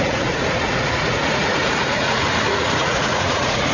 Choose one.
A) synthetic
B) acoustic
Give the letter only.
A